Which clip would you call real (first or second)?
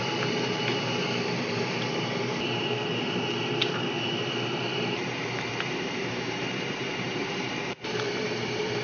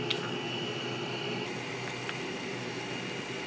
second